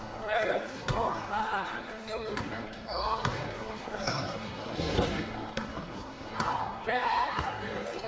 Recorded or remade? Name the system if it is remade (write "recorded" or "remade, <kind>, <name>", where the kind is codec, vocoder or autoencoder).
remade, codec, SNAC